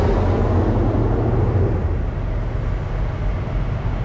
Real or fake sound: real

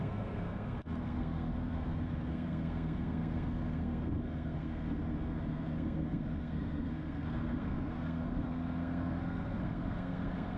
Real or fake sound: fake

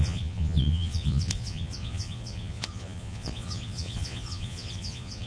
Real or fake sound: fake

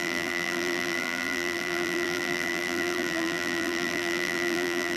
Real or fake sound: fake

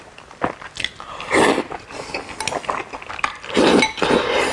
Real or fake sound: real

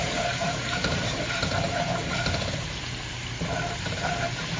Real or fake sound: fake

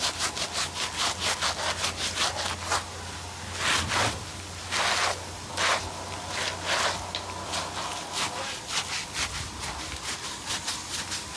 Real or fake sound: real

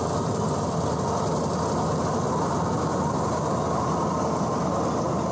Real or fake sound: real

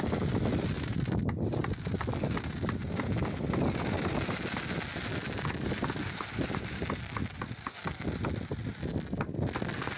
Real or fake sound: real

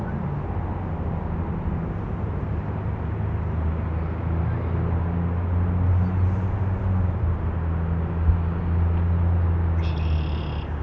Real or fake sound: real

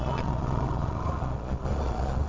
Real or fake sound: fake